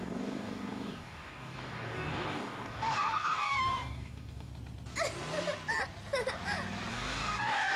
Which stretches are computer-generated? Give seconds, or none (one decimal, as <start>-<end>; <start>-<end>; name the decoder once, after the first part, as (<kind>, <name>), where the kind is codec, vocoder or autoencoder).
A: 0.0-4.5 (codec, DAC); 6.9-7.8

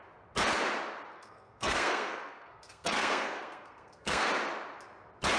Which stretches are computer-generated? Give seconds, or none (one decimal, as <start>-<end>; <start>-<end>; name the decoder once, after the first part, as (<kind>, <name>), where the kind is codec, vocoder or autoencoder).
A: 1.1-4.3 (codec, SNAC)